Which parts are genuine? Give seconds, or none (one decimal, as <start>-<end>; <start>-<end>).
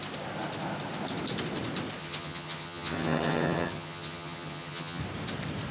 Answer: 0.0-2.0; 5.0-5.7